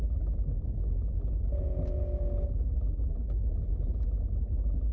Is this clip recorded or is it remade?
recorded